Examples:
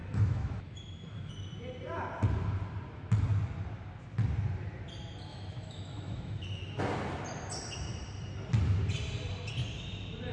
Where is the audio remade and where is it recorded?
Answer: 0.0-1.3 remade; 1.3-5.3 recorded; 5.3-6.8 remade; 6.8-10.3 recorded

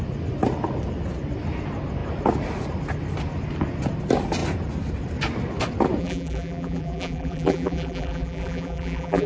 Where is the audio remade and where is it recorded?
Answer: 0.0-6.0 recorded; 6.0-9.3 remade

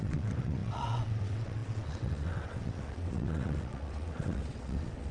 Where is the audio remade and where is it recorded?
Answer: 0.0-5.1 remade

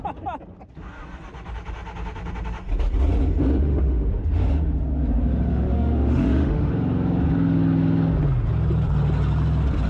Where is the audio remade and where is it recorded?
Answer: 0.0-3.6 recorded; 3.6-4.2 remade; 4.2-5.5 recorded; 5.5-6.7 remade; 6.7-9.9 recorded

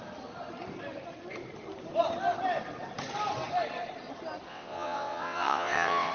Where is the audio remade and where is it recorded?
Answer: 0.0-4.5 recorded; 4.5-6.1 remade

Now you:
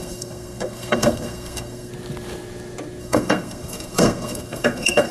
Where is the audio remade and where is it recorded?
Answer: 0.0-1.9 remade; 1.9-3.0 recorded; 3.0-5.1 remade

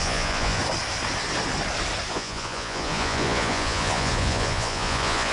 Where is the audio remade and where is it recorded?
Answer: 0.0-0.6 remade; 0.6-2.1 recorded; 2.1-5.3 remade

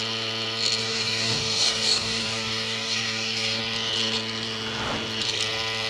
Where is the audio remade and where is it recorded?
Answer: 0.0-0.8 recorded; 0.8-3.6 remade; 3.6-5.9 recorded